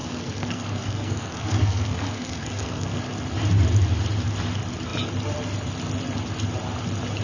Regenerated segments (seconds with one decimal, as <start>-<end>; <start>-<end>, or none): 0.0-3.0